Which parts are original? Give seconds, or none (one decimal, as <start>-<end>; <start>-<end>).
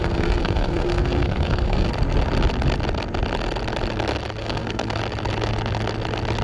1.9-4.4; 5.0-6.4